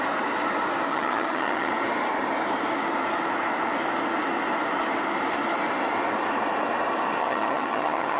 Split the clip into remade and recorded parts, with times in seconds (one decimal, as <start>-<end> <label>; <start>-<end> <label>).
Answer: 0.0-0.9 recorded; 0.9-1.7 remade; 1.7-7.2 recorded; 7.2-8.2 remade